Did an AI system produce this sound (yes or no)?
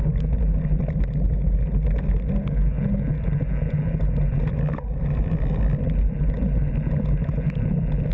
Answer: no